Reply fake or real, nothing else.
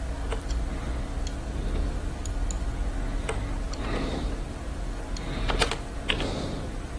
real